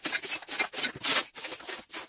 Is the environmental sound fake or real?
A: real